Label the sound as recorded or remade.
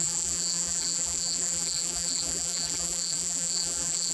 remade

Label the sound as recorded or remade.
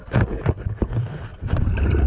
remade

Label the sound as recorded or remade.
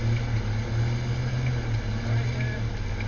recorded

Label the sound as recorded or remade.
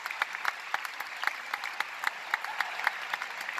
recorded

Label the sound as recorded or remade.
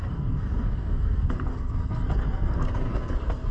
remade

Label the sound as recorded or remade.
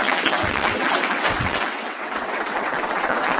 remade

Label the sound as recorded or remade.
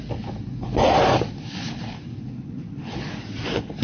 recorded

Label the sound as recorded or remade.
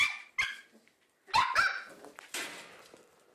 recorded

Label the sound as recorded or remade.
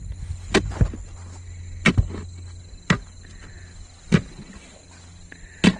recorded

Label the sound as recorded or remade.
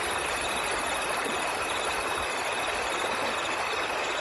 remade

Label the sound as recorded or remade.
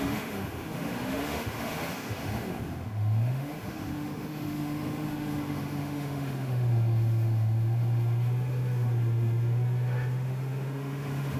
remade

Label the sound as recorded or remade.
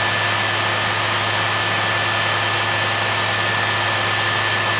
recorded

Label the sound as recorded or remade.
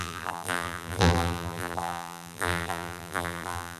remade